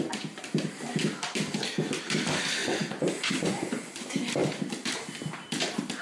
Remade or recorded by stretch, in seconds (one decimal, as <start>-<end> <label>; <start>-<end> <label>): 0.0-2.6 recorded; 2.6-3.9 remade; 3.9-6.0 recorded